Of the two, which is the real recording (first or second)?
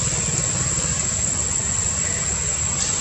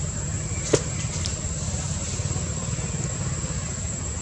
first